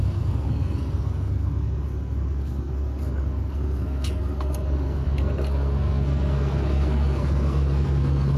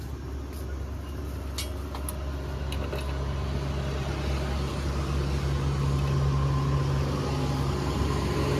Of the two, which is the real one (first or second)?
second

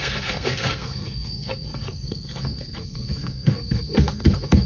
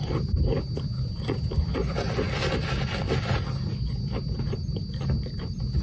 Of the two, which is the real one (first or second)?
second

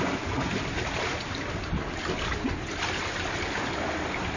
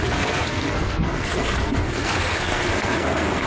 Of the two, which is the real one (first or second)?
first